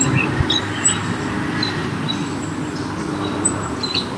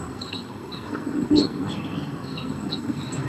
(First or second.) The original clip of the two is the first